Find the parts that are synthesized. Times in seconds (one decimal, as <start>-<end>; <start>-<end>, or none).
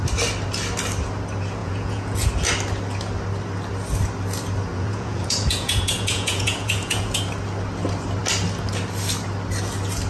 1.6-2.5; 4.7-7.2